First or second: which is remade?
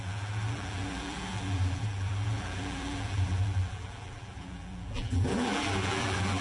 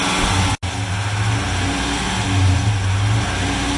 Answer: first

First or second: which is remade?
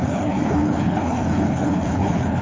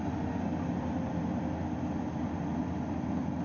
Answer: first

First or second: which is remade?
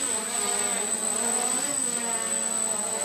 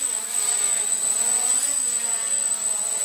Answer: second